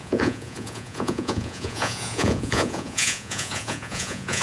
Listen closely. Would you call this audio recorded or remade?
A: remade